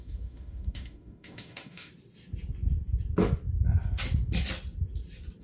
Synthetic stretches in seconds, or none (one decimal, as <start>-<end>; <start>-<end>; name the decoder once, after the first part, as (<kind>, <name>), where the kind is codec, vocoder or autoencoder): 0.0-1.9 (autoencoder, DAC-VAE)